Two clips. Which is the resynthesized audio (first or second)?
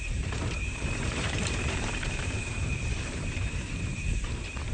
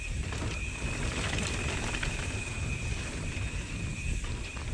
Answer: first